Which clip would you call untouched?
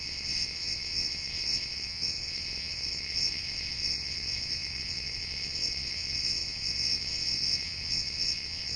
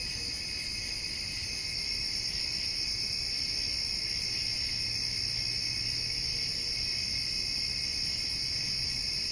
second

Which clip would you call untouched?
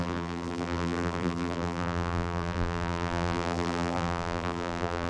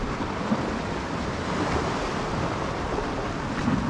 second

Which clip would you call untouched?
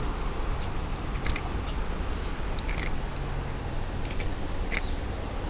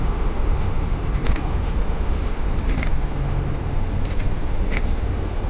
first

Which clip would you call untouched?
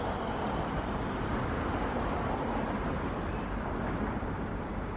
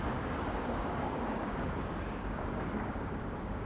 first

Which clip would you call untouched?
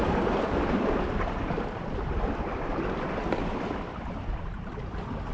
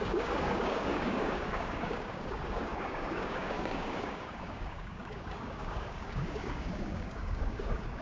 first